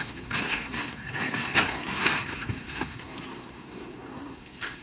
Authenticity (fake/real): fake